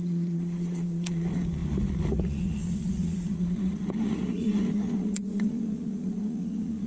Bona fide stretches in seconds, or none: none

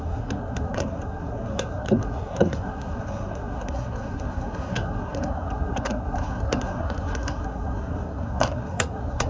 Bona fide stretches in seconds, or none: none

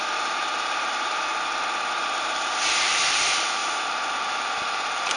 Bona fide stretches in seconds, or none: 1.3-2.2; 3.6-4.2